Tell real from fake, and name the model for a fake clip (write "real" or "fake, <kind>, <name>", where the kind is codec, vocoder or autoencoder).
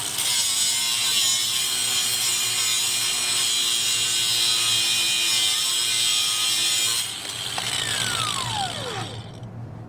real